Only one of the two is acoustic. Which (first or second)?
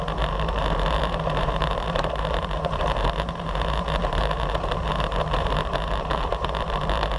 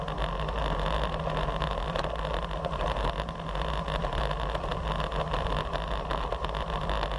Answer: second